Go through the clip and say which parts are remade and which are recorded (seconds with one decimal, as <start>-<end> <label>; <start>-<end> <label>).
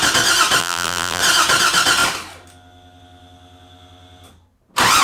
0.0-0.6 recorded; 0.6-1.2 remade; 1.2-5.0 recorded